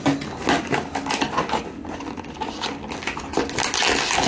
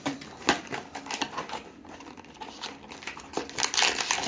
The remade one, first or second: second